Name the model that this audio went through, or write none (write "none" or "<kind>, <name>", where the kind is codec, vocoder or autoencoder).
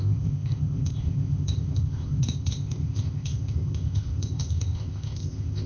codec, ZipCodec